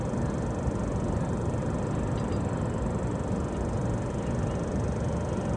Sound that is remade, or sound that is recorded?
recorded